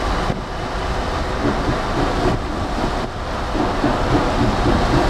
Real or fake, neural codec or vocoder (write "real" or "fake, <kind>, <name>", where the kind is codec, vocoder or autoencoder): real